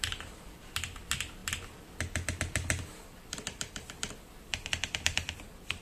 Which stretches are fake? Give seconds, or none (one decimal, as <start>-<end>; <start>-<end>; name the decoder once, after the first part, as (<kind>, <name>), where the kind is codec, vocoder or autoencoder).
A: 0.0-5.8 (vocoder, BigVGAN v2)